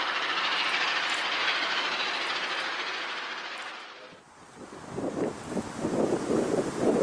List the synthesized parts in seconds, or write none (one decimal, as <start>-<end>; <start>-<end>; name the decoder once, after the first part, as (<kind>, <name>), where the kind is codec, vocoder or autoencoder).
none